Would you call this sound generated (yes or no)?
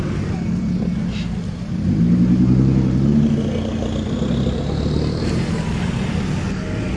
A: no